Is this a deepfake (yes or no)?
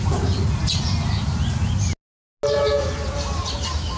no